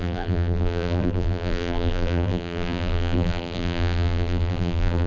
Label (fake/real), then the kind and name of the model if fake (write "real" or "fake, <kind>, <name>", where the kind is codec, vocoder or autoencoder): fake, vocoder, BigVGAN v2